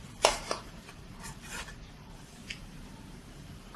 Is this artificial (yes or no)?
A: yes